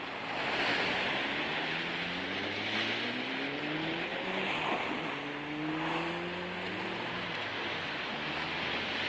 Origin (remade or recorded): recorded